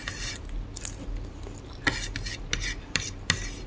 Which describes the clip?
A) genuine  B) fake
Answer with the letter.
A